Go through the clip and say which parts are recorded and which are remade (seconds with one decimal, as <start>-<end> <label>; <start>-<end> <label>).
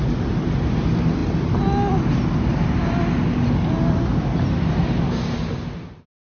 0.0-6.3 recorded